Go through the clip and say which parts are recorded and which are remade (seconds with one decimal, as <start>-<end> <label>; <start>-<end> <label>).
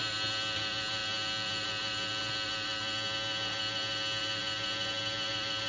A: 0.0-5.7 recorded